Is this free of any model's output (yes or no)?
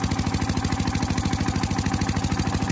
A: yes